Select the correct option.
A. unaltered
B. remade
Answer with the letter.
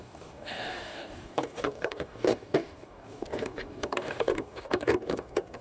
B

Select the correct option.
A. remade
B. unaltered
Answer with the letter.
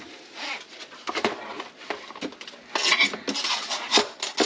B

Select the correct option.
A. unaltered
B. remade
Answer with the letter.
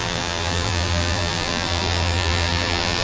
B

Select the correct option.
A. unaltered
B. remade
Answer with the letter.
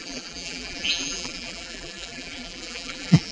B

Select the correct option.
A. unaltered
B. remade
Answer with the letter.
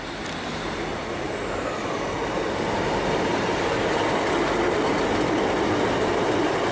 A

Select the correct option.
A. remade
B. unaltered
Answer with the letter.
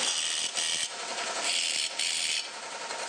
B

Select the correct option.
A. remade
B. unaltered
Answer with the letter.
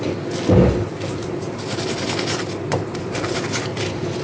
B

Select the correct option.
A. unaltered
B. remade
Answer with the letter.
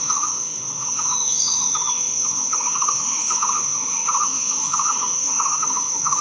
B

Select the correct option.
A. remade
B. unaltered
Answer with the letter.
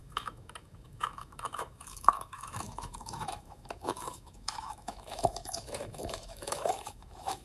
A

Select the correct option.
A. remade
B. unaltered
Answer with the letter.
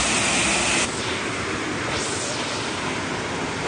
B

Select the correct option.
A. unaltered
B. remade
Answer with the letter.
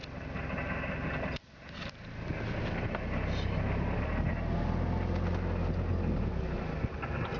A